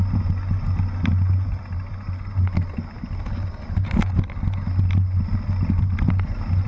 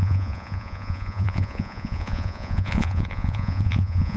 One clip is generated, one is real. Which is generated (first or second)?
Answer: second